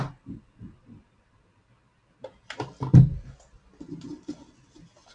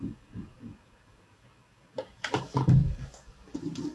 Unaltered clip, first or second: first